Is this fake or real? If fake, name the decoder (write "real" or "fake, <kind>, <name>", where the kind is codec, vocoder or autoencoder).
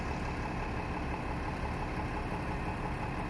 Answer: real